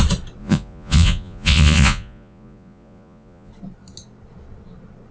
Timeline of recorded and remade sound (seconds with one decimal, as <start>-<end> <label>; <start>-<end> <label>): 0.0-0.4 recorded; 0.4-3.5 remade; 3.5-5.1 recorded